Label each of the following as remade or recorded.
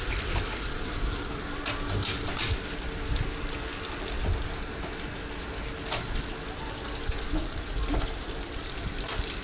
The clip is recorded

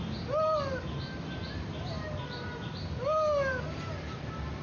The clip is recorded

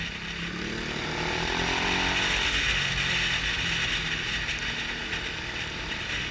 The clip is recorded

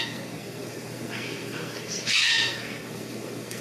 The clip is remade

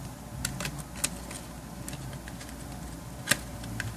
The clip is recorded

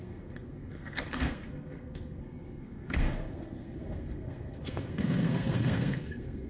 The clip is remade